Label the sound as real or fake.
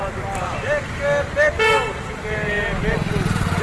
real